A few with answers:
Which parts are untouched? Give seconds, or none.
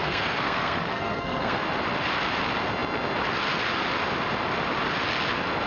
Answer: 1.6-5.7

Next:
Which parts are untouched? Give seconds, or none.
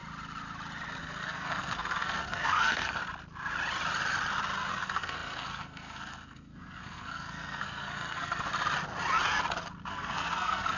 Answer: 0.0-1.0; 3.0-4.7; 8.5-9.9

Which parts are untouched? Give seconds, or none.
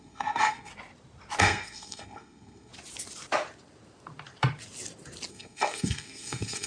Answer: 0.7-1.4; 2.7-5.3